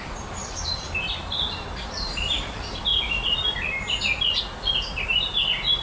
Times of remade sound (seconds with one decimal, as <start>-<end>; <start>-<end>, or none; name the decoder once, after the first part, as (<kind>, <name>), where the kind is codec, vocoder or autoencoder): 0.0-5.8 (vocoder, BigVGAN v2)